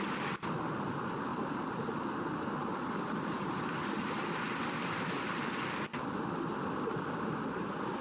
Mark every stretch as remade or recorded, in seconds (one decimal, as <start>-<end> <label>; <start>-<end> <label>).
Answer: 0.0-8.0 recorded

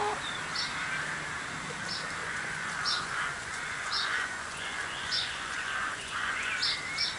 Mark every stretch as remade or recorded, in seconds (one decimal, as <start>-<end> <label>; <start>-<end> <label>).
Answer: 0.0-2.2 recorded; 2.2-6.5 remade; 6.5-7.2 recorded

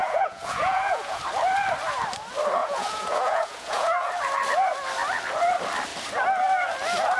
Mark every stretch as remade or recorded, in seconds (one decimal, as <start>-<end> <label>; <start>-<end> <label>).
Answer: 0.0-1.2 remade; 1.2-2.6 recorded; 2.6-4.1 remade; 4.1-7.2 recorded

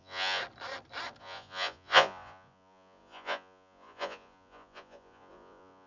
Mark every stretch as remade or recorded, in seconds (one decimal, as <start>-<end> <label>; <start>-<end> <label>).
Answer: 0.0-0.4 remade; 0.4-1.2 recorded; 1.2-5.9 remade

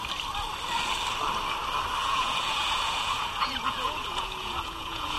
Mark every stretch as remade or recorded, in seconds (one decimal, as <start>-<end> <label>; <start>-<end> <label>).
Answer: 0.0-2.0 recorded; 2.0-5.2 remade

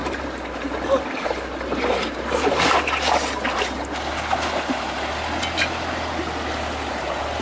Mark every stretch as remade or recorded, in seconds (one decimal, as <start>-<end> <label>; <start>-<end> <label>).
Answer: 0.0-7.4 recorded